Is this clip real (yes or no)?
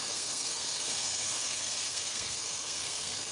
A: no